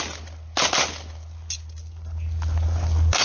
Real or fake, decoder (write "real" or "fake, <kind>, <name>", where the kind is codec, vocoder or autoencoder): real